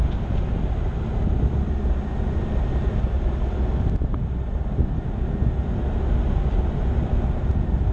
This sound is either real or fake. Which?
real